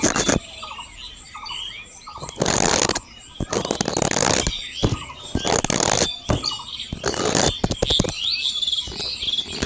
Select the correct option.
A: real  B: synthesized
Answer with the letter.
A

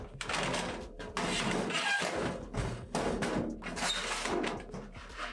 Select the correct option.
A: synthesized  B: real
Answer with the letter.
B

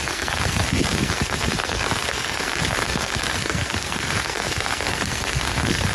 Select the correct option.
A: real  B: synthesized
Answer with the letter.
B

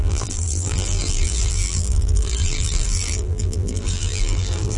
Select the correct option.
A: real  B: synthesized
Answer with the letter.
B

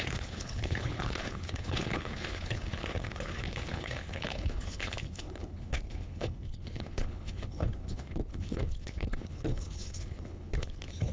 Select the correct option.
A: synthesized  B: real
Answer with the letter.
A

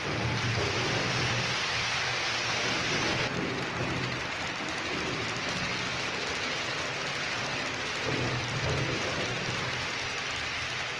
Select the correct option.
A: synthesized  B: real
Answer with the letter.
B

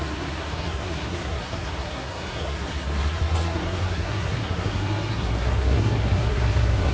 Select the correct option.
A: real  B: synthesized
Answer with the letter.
B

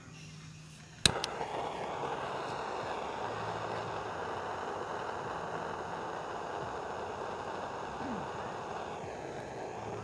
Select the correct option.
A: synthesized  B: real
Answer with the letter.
B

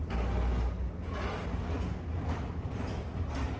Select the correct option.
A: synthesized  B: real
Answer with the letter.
B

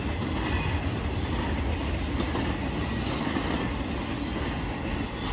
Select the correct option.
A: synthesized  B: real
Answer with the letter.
B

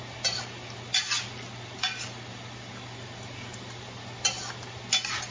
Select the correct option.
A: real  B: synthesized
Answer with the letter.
A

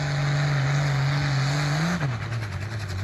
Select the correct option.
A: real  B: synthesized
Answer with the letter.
A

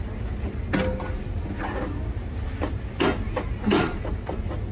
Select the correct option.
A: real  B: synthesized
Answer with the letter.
A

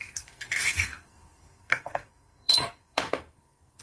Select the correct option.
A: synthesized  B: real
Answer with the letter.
A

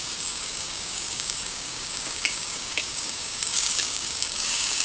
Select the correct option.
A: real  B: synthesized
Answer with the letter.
B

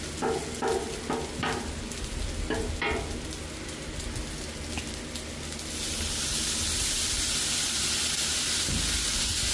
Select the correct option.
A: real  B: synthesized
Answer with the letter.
A